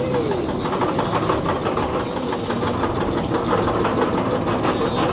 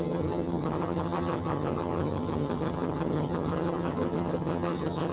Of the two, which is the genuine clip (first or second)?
first